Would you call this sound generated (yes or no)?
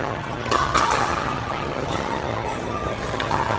yes